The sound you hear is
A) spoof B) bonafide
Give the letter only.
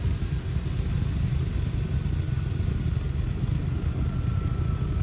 B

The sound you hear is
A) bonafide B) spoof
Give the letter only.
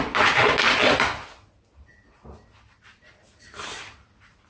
A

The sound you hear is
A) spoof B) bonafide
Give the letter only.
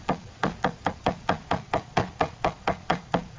A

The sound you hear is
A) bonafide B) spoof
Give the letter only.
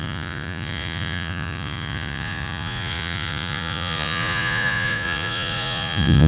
B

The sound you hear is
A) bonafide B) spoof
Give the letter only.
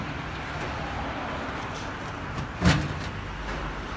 A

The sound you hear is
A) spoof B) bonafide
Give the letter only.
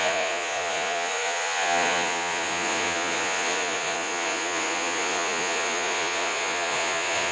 A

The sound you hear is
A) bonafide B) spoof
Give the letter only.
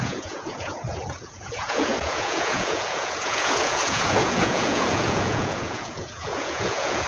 B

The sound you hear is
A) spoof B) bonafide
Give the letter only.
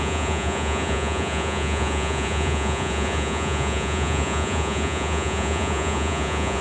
A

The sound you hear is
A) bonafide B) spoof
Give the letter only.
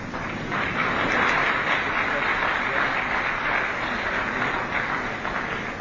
A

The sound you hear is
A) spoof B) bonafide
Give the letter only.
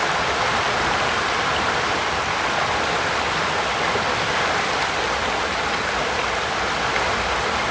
B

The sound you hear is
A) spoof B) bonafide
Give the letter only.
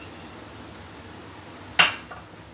B